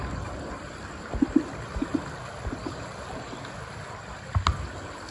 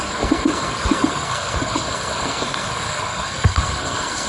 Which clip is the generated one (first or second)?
second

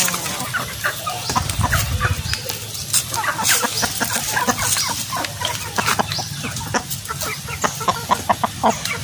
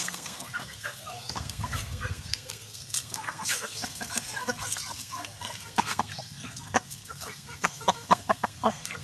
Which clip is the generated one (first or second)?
second